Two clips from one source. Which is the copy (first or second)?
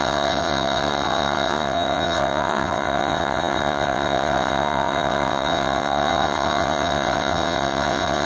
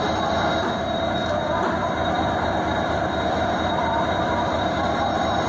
first